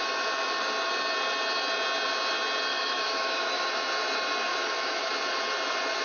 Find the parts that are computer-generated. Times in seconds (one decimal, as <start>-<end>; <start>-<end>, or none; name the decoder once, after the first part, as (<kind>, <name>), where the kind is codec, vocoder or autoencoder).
2.7-3.7 (autoencoder, DAC-VAE); 4.5-5.1